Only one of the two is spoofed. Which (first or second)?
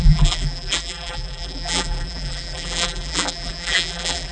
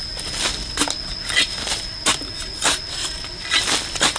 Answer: first